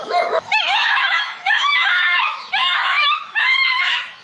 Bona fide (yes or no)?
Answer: no